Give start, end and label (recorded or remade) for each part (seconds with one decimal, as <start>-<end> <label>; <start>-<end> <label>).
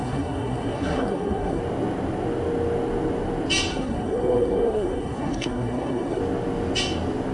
0.0-1.6 remade; 1.6-3.7 recorded; 3.7-6.2 remade; 6.2-7.3 recorded